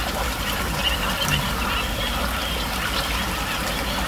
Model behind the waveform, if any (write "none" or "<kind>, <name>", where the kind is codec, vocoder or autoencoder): none